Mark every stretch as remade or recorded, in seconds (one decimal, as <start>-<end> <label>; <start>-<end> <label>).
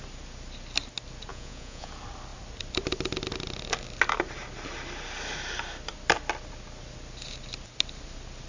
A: 0.0-1.3 recorded; 1.3-1.9 remade; 1.9-8.5 recorded